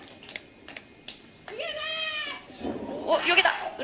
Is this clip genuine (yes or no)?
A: yes